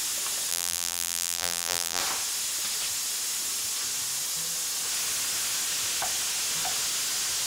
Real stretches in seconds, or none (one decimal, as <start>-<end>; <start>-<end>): 0.0-0.5; 2.0-7.5